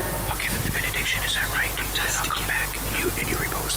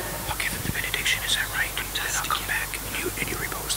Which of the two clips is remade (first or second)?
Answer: second